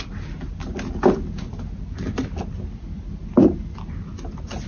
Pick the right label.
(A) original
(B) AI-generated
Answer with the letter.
A